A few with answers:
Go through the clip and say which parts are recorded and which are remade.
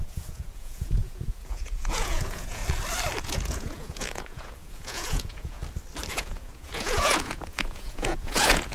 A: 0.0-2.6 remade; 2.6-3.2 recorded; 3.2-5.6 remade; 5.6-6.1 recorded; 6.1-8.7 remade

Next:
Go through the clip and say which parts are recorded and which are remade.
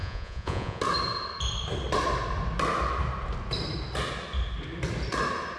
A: 0.0-0.8 remade; 0.8-5.6 recorded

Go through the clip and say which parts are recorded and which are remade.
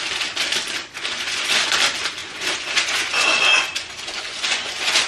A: 0.0-0.8 recorded; 0.8-1.7 remade; 1.7-2.2 recorded; 2.2-5.1 remade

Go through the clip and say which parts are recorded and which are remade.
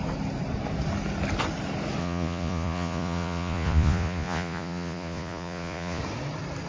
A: 0.0-2.0 recorded; 2.0-6.0 remade; 6.0-6.7 recorded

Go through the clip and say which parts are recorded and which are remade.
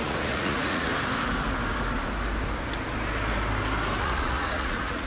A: 0.0-0.9 remade; 0.9-4.0 recorded; 4.0-5.1 remade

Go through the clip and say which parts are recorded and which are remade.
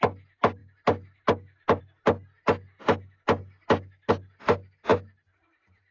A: 0.0-5.9 recorded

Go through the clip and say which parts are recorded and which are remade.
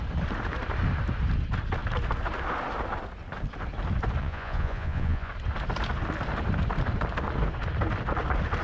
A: 0.0-4.2 recorded; 4.2-5.3 remade; 5.3-8.6 recorded